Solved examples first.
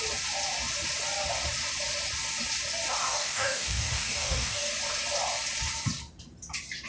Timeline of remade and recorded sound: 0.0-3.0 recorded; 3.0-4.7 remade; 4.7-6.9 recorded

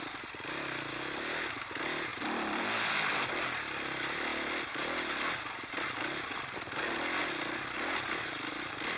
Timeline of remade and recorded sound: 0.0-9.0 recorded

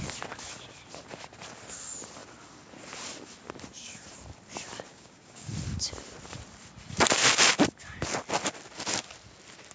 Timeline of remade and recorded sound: 0.0-4.9 recorded; 4.9-5.5 remade; 5.5-9.7 recorded